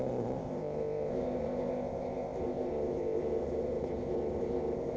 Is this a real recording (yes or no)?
no